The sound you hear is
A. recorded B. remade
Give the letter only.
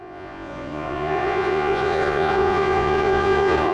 B